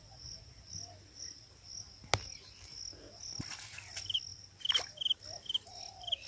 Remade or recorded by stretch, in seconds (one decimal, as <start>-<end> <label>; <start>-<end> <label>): 0.0-0.6 remade; 0.6-6.3 recorded